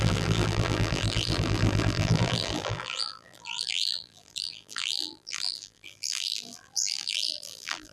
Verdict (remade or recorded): remade